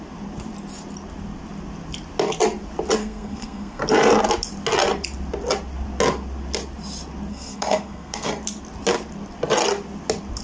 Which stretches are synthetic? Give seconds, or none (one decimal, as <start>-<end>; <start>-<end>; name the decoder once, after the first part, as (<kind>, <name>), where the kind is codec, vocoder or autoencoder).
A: 3.0-3.8 (codec, SNAC); 7.3-8.3